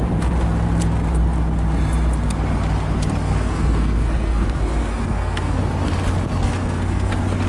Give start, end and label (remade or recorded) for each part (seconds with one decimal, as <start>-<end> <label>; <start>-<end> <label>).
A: 0.0-3.2 recorded; 3.2-5.6 remade; 5.6-6.4 recorded; 6.4-7.1 remade; 7.1-7.5 recorded